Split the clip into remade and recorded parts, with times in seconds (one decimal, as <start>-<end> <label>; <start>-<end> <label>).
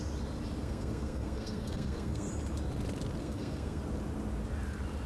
0.0-0.6 recorded; 0.6-2.3 remade; 2.3-3.2 recorded; 3.2-3.8 remade; 3.8-5.1 recorded